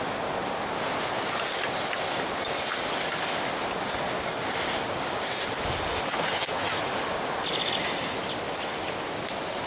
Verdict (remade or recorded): recorded